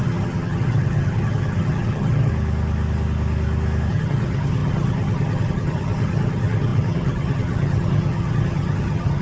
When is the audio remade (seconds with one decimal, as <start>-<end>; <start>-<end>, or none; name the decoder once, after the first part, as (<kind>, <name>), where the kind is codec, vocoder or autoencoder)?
0.0-2.3 (vocoder, HiFi-GAN); 3.9-9.2